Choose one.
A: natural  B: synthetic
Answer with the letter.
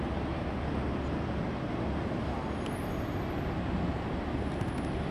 A